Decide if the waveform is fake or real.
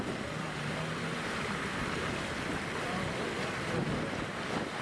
real